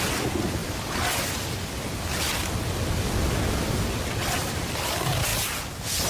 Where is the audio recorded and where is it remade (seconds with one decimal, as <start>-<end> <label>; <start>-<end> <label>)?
0.0-6.1 recorded